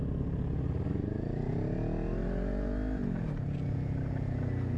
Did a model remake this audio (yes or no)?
no